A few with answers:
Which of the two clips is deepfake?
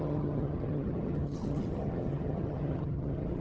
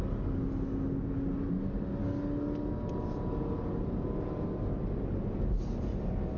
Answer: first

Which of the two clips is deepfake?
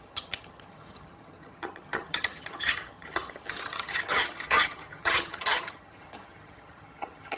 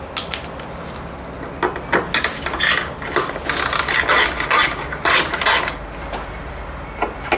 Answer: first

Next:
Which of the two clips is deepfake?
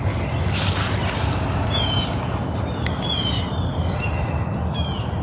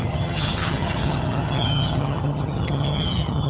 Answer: second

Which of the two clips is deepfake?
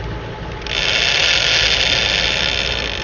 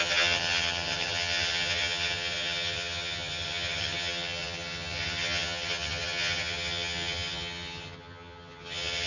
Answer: second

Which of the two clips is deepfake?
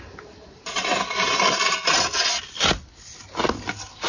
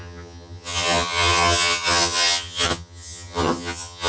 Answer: second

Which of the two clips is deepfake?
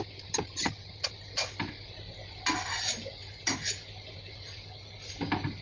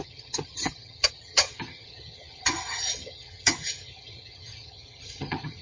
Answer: second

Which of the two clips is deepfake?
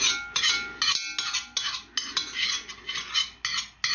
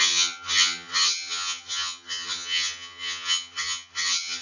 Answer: second